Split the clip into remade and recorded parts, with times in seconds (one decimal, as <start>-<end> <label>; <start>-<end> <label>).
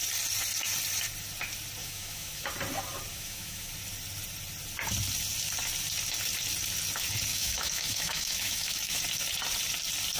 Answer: 0.0-1.8 recorded; 1.8-2.5 remade; 2.5-3.1 recorded; 3.1-3.7 remade; 3.7-7.3 recorded; 7.3-9.0 remade; 9.0-10.2 recorded